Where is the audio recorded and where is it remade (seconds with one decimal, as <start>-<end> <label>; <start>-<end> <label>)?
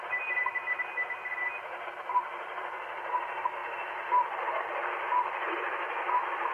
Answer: 0.0-6.5 recorded